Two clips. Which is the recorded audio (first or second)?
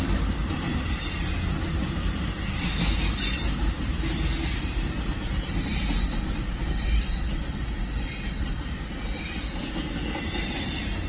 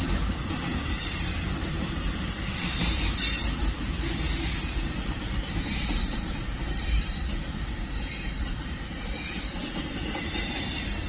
first